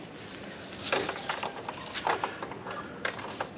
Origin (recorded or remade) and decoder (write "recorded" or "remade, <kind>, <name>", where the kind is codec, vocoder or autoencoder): recorded